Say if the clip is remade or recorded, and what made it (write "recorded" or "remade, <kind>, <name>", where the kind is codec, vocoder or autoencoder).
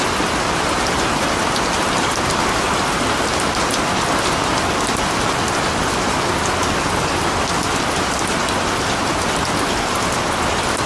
recorded